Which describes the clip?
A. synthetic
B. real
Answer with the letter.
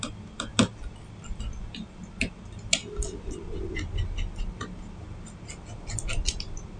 B